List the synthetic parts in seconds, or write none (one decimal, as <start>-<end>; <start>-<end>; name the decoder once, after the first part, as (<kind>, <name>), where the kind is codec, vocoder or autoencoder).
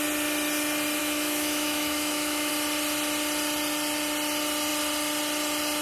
1.0-2.5 (autoencoder, DAC-VAE)